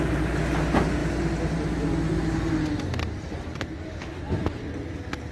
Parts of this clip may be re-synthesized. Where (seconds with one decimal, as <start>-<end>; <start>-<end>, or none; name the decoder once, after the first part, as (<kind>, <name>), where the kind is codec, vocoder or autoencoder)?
none